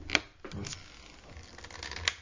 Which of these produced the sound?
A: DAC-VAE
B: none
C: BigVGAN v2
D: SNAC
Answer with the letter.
B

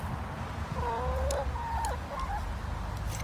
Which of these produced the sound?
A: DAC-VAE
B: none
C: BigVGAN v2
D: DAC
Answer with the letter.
B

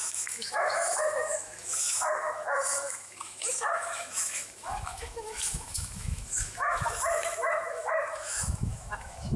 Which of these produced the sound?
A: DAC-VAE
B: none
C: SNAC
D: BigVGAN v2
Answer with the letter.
A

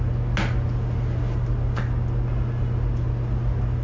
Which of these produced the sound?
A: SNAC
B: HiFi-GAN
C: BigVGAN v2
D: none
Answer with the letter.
D